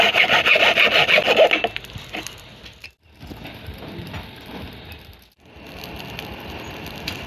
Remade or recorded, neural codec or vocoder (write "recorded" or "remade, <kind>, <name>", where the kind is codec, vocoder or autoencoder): recorded